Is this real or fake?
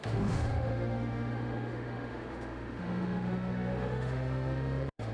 fake